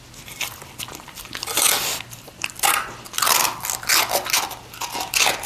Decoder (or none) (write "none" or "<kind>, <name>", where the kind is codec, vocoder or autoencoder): none